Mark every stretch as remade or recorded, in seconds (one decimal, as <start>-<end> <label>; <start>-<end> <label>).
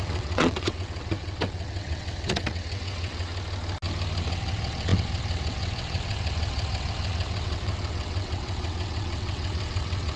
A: 0.0-3.3 remade; 3.3-4.2 recorded; 4.2-10.2 remade